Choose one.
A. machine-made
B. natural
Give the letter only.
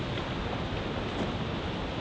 B